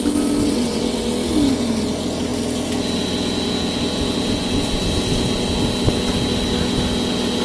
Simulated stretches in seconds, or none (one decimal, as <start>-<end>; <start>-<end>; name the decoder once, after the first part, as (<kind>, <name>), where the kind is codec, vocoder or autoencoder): 0.4-1.1 (vocoder, WaveNeXt)